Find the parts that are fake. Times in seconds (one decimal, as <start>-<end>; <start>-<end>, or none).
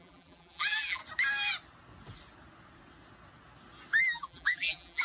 0.0-1.0; 4.0-5.0